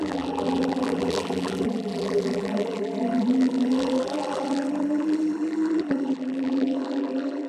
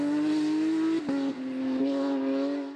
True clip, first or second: second